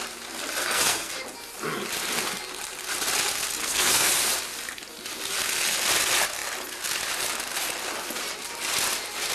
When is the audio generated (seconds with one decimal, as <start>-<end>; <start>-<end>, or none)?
0.6-1.1; 3.6-4.1